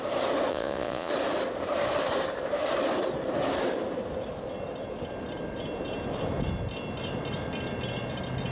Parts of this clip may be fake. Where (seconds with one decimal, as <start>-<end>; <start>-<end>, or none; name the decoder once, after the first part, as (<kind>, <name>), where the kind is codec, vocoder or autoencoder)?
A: 0.5-1.1 (vocoder, Vocos)